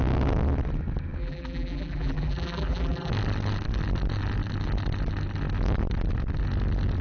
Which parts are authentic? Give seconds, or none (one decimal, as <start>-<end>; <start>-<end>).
0.0-1.2; 3.1-7.0